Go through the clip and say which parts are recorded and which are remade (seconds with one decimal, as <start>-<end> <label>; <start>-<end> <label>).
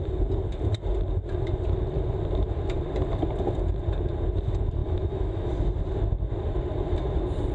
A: 0.0-4.8 recorded; 4.8-5.5 remade; 5.5-7.5 recorded